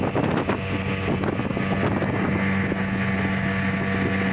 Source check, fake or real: real